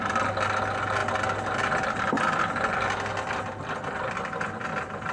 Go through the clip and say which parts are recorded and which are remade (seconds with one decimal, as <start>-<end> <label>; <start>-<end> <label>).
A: 0.0-5.1 recorded